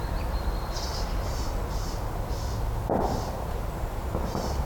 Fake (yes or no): no